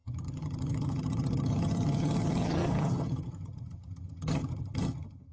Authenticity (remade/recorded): remade